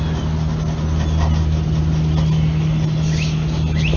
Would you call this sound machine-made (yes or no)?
no